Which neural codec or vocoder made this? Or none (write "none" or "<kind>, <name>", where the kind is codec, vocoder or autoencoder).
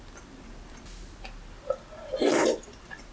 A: none